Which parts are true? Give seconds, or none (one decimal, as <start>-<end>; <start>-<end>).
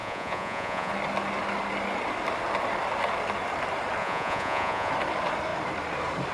0.9-4.0; 4.9-6.3